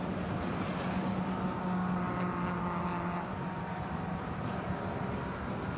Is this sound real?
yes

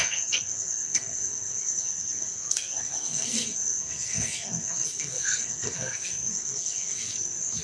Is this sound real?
no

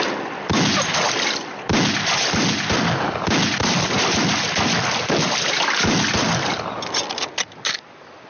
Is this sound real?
yes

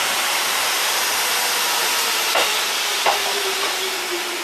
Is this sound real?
no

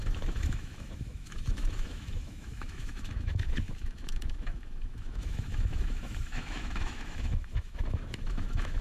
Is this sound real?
no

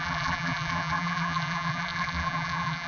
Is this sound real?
no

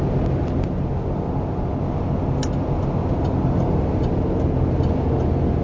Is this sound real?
yes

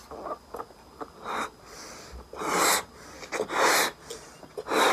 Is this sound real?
yes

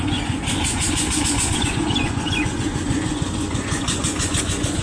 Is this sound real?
no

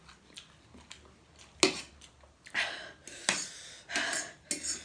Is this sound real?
yes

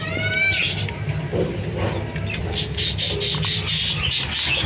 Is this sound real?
yes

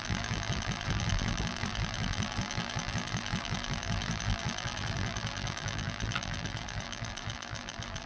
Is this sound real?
no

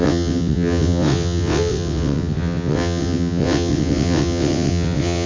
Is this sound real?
no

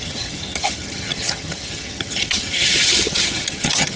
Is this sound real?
no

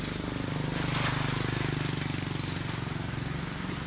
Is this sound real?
yes